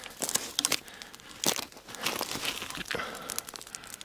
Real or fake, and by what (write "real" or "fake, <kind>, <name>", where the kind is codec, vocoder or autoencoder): real